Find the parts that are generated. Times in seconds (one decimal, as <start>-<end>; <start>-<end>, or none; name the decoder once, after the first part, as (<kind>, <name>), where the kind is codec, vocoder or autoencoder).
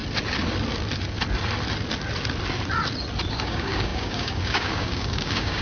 3.3-5.6 (codec, DAC)